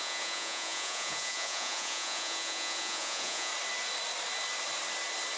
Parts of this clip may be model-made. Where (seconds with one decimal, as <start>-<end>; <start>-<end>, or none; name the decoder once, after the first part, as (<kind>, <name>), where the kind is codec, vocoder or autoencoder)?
0.0-3.5 (vocoder, Vocos)